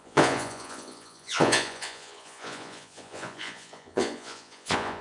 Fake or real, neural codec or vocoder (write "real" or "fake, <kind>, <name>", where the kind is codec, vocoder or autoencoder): fake, vocoder, Vocos